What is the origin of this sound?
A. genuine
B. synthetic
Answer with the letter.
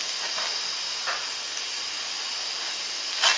A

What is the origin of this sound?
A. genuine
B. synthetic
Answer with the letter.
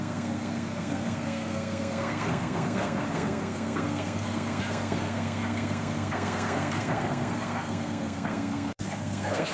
B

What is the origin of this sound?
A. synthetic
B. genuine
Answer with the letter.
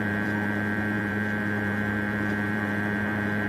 A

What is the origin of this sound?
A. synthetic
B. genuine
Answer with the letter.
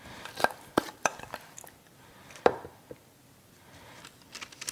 A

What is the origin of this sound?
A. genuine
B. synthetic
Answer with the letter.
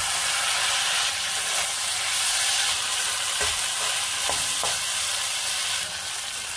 A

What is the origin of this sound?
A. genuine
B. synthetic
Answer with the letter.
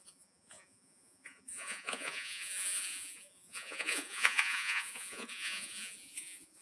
B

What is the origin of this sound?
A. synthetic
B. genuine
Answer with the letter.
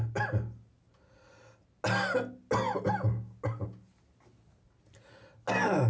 B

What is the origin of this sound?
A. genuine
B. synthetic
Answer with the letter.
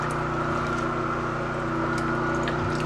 A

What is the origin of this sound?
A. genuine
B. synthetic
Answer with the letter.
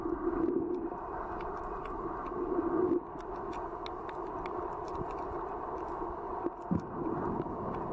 A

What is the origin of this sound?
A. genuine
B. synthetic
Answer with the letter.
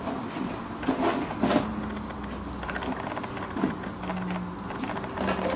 A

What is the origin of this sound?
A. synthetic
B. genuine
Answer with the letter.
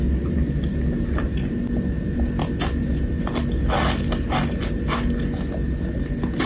B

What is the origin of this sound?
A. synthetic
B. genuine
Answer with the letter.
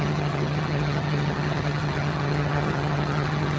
A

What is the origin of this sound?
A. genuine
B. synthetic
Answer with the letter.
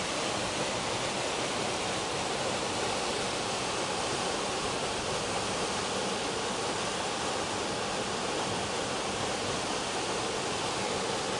A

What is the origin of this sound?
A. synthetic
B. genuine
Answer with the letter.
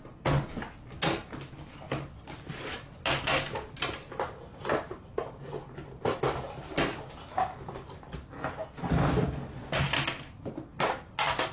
B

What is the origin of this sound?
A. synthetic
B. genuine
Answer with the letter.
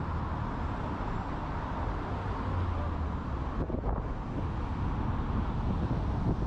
B